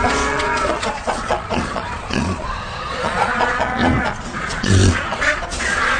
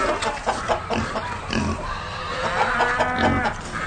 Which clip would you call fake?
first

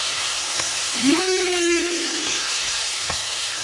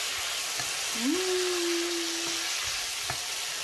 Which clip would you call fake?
first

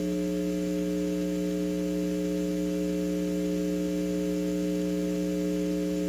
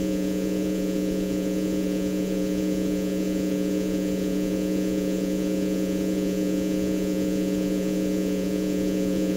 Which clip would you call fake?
second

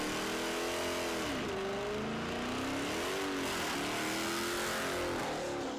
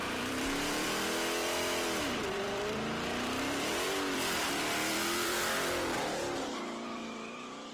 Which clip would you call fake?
second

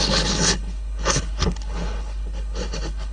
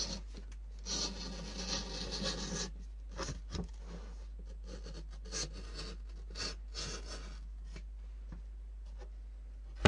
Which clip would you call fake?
first